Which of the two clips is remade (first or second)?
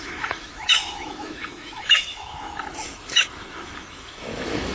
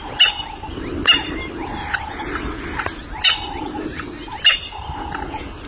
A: first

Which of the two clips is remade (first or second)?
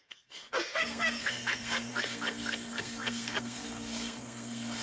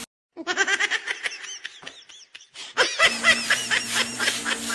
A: first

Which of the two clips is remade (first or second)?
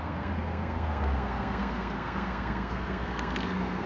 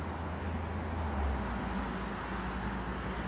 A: first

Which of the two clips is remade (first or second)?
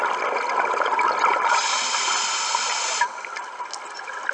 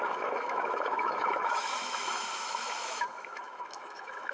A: second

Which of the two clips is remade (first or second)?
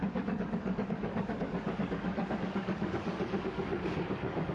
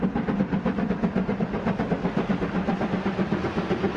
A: first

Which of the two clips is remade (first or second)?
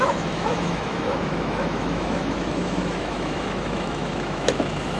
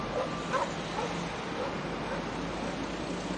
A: first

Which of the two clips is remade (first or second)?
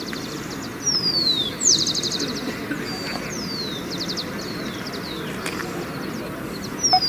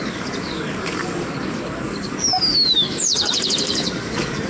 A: second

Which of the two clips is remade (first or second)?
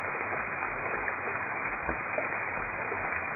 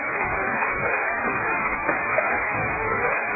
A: second